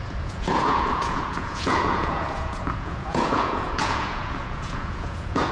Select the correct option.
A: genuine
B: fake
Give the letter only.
B